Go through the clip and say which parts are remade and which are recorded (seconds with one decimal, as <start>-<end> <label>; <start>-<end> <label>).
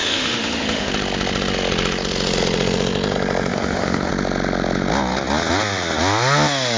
0.0-0.9 remade; 0.9-3.5 recorded; 3.5-4.1 remade; 4.1-6.8 recorded